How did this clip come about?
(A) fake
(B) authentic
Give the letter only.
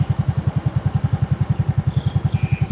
B